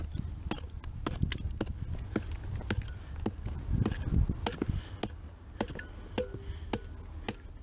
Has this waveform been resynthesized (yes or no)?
no